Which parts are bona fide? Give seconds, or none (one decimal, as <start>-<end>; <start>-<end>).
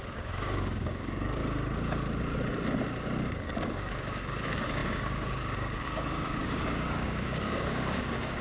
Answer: 1.4-3.3